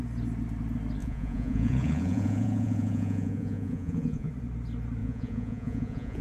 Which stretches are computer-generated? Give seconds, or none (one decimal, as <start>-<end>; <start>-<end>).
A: 1.0-4.3; 5.0-6.2